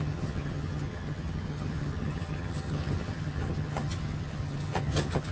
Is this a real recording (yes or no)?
no